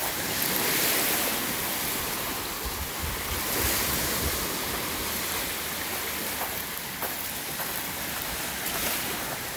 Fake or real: real